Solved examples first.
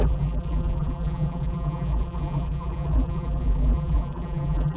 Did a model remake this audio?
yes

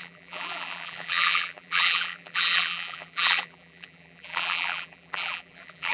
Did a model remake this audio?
yes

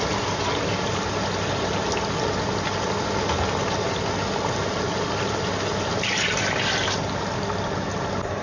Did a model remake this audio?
no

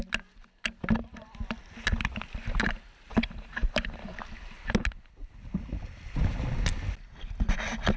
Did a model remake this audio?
no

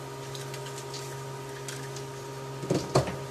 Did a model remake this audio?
yes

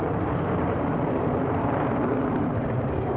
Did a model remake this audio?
yes